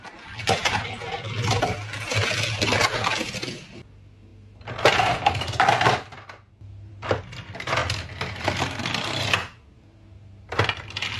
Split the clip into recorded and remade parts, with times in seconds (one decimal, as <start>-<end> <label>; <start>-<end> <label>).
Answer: 0.0-7.8 recorded; 7.8-8.4 remade; 8.4-11.2 recorded